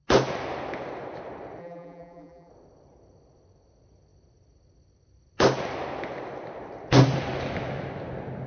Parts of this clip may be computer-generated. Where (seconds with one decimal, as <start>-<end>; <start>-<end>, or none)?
1.6-2.5